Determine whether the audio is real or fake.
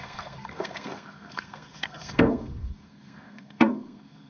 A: fake